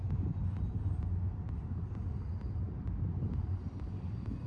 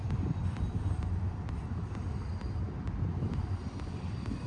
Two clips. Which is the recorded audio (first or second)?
first